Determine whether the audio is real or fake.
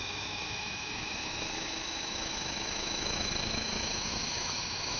fake